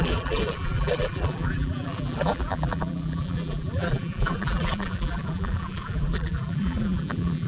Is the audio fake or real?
fake